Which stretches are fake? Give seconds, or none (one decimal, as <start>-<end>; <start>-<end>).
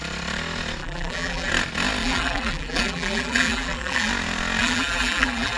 0.8-1.5; 2.0-4.1; 4.6-5.6